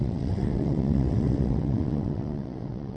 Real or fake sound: fake